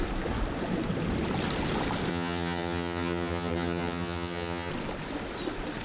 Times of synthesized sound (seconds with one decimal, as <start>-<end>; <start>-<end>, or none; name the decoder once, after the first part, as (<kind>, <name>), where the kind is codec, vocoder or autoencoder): 2.1-4.7 (vocoder, HiFi-GAN)